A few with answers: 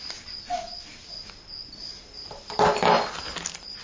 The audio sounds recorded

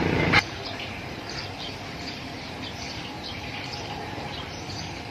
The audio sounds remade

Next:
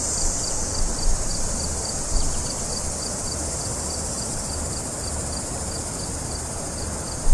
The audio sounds recorded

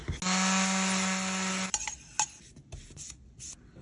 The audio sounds recorded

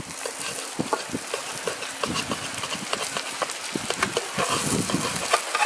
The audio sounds recorded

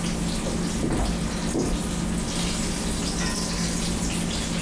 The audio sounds recorded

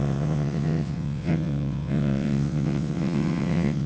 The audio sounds remade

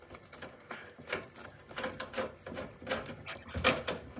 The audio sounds recorded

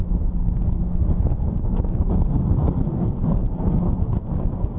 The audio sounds remade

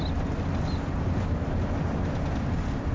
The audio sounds recorded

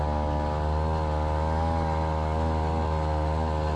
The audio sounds recorded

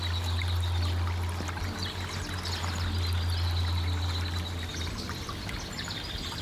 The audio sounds recorded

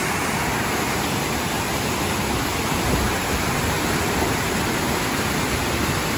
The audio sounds recorded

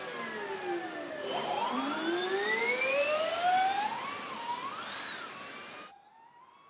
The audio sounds recorded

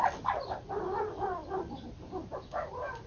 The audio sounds recorded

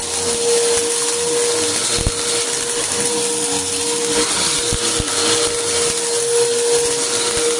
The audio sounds recorded